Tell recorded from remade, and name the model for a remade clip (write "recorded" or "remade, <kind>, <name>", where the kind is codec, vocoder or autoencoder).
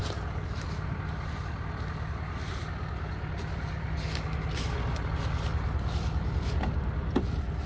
recorded